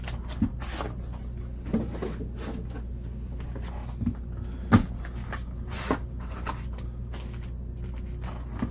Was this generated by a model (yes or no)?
no